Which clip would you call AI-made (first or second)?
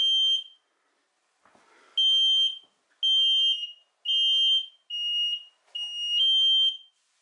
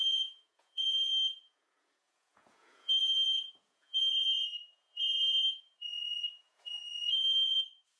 second